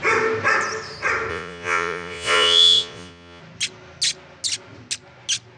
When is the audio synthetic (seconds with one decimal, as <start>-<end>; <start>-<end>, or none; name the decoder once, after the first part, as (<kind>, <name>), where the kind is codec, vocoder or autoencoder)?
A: 1.3-3.4 (vocoder, Vocos)